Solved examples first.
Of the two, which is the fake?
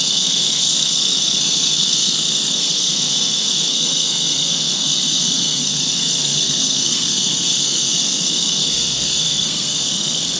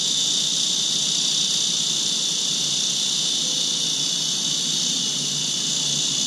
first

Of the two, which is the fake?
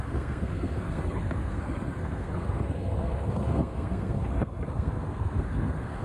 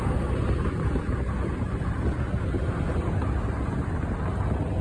first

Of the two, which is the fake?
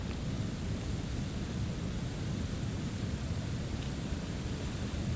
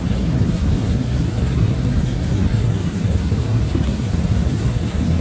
second